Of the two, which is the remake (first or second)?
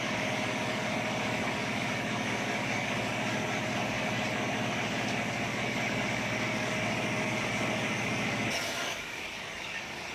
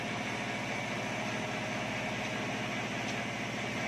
first